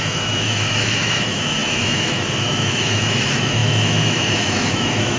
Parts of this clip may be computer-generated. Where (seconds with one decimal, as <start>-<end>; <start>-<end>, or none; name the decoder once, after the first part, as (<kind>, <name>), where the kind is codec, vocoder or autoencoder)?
0.0-5.2 (autoencoder, DAC-VAE)